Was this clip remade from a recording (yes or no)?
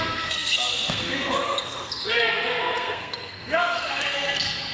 yes